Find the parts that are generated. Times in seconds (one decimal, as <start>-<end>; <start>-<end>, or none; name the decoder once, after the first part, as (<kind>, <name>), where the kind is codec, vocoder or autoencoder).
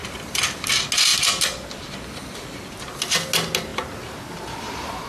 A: 0.0-0.7 (vocoder, BigVGAN v2)